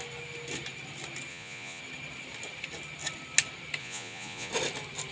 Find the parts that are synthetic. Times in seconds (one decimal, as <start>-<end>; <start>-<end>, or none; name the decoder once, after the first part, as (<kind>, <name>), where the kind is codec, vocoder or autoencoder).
1.3-1.8 (vocoder, Vocos); 3.8-4.5